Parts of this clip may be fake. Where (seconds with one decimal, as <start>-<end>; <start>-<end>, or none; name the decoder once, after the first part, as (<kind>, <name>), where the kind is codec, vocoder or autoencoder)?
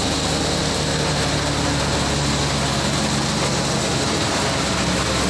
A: none